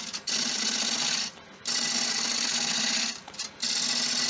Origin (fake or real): real